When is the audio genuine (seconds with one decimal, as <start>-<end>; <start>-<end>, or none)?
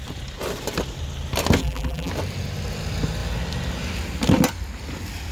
0.0-1.6; 2.1-5.3